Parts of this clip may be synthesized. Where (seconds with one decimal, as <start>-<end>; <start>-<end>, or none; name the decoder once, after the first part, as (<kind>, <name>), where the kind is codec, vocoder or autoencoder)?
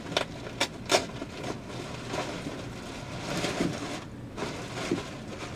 none